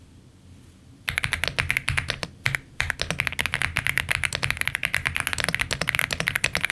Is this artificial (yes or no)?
no